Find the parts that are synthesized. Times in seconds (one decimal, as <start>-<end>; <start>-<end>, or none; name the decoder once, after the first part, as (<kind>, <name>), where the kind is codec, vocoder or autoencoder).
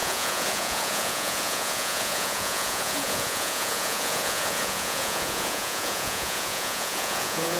0.0-7.6 (vocoder, Vocos)